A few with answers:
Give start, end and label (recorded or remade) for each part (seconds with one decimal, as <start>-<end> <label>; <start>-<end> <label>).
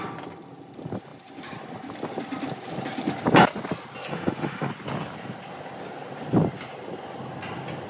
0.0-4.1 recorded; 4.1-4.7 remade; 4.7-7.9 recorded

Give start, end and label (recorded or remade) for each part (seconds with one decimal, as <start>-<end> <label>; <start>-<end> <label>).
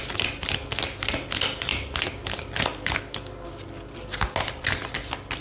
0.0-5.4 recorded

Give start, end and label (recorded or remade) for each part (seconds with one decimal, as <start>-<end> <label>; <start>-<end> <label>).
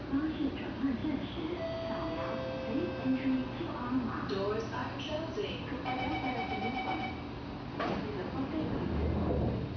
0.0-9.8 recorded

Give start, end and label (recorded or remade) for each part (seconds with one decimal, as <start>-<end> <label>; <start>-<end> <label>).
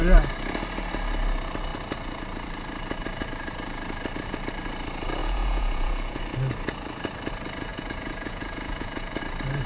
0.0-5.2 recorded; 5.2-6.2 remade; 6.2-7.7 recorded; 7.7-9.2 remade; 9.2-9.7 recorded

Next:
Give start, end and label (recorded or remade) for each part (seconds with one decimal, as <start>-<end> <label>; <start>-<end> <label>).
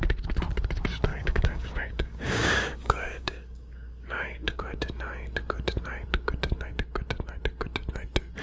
0.0-1.1 recorded; 1.1-4.6 remade; 4.6-8.4 recorded